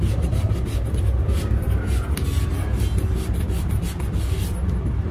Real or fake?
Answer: real